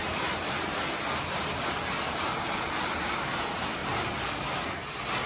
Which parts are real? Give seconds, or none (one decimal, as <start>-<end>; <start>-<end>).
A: 3.2-3.8; 4.3-5.3